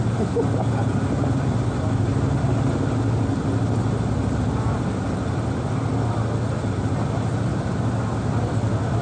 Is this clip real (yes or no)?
yes